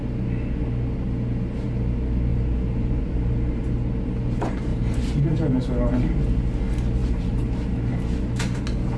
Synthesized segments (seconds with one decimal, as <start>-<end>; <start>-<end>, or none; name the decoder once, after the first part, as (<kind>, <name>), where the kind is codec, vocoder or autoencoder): 2.3-3.7 (vocoder, BigVGAN v2); 4.7-6.2; 7.0-8.6